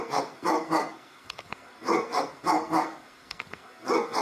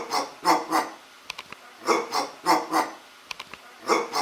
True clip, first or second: second